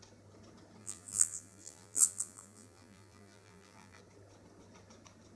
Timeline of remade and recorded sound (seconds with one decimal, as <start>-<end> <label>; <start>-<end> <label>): 0.0-0.8 recorded; 0.8-4.0 remade; 4.0-5.4 recorded